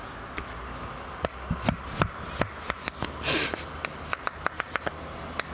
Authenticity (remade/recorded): recorded